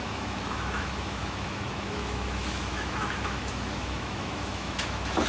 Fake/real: fake